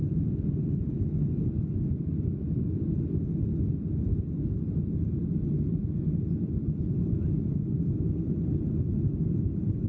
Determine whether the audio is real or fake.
real